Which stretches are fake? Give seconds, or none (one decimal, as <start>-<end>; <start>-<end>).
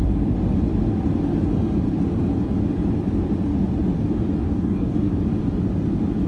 4.4-5.1